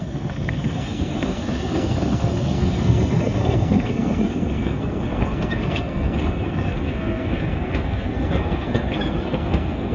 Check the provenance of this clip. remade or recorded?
remade